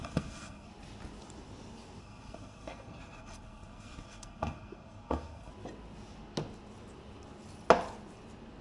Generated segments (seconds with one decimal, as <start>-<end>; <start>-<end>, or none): 0.0-0.7; 2.0-5.5